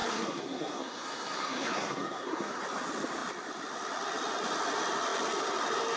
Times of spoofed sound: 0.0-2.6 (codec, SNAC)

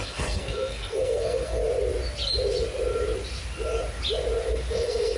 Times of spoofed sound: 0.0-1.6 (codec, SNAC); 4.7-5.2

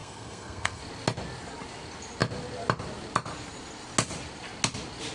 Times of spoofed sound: 0.0-0.8 (codec, SNAC)

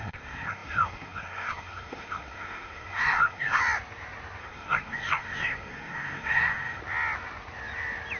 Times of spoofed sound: 0.0-3.6 (codec, SNAC); 4.4-6.8